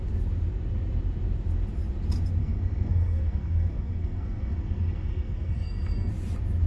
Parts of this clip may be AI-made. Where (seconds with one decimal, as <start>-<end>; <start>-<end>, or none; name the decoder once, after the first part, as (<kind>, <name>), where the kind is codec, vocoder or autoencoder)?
2.4-6.1 (codec, SNAC)